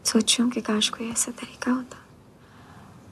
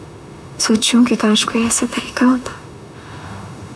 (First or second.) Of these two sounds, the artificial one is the second